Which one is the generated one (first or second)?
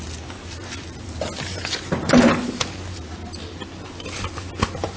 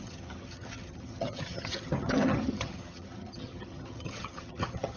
second